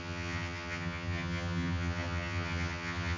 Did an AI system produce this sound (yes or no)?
yes